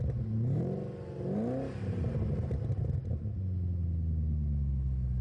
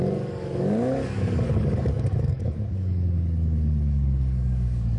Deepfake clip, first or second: second